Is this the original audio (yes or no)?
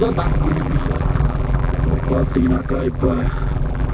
no